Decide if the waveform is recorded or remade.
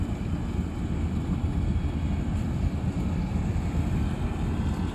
recorded